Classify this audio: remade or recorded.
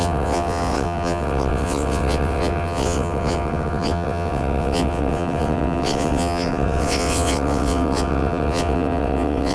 remade